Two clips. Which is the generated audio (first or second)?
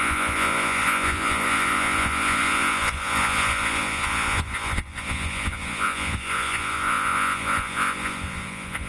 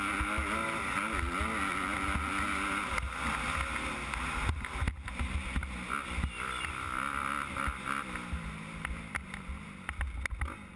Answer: first